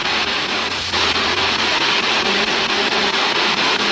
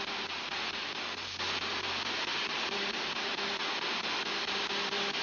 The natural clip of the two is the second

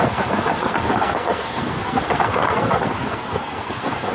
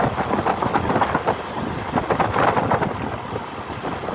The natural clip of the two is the second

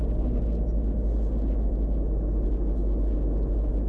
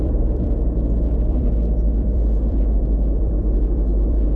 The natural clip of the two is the first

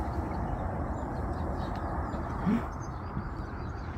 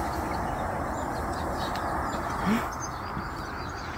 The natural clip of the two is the second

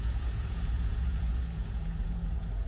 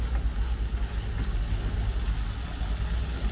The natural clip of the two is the second